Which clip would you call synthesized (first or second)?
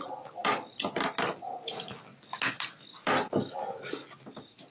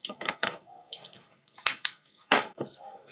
second